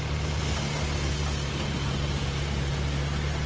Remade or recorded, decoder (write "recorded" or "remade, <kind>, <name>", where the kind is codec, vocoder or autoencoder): recorded